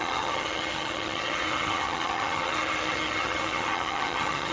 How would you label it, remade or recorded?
remade